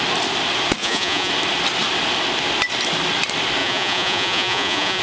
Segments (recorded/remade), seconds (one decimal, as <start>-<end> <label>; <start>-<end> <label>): 0.0-0.8 recorded; 0.8-1.3 remade; 1.3-3.6 recorded; 3.6-5.0 remade